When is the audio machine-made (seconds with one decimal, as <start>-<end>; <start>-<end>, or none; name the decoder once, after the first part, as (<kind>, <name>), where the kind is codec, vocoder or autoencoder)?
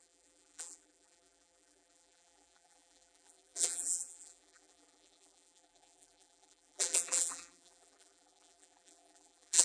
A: 0.0-9.6 (vocoder, BigVGAN v2)